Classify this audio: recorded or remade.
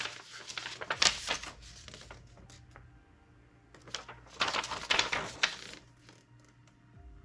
recorded